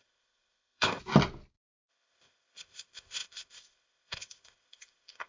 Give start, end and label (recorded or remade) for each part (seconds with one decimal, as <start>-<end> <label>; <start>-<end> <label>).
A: 0.0-1.0 remade; 1.0-1.9 recorded; 1.9-5.3 remade